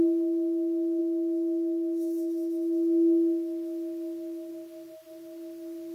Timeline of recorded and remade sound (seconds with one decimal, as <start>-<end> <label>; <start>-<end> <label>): 0.0-5.9 recorded